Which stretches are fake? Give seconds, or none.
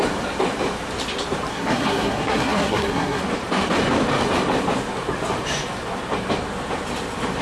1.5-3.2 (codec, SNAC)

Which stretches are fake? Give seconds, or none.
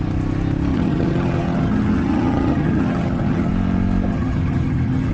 0.7-3.5 (vocoder, HiFi-GAN); 4.1-5.1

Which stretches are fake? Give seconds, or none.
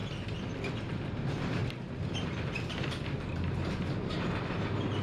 none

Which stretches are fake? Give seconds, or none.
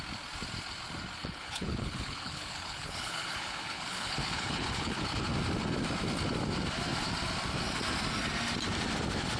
1.2-5.2 (codec, HILCodec)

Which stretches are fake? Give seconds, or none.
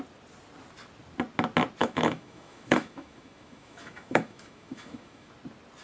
1.8-5.3 (autoencoder, DAC-VAE)